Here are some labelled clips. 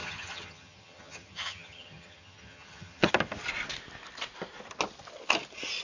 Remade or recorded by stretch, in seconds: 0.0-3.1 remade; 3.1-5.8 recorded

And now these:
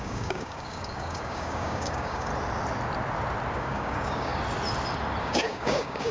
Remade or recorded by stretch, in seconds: 0.0-2.3 remade; 2.3-3.5 recorded; 3.5-4.3 remade; 4.3-5.2 recorded; 5.2-6.1 remade

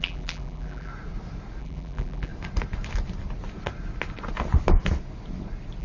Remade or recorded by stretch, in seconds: 0.0-0.9 remade; 0.9-1.6 recorded; 1.6-2.3 remade; 2.3-5.8 recorded

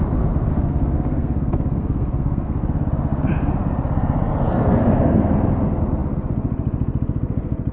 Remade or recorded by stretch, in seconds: 0.0-0.5 recorded; 0.5-2.6 remade; 2.6-7.7 recorded

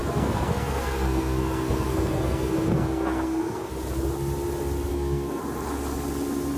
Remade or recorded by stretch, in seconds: 0.0-3.7 remade; 3.7-4.9 recorded; 4.9-5.4 remade; 5.4-6.6 recorded

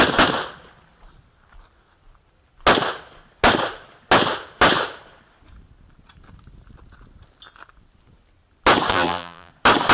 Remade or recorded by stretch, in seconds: 0.0-8.9 recorded; 8.9-9.5 remade; 9.5-9.9 recorded